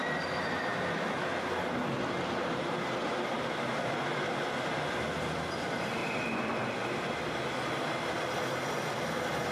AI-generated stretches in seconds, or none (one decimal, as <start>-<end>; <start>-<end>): none